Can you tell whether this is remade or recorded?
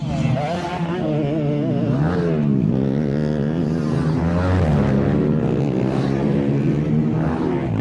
recorded